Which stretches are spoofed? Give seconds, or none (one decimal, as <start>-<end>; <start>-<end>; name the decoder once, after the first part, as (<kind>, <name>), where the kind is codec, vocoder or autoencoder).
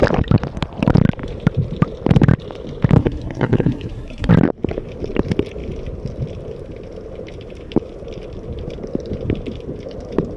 3.0-4.3 (codec, SNAC)